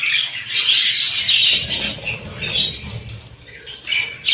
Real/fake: real